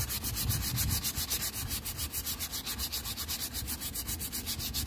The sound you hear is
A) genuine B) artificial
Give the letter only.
A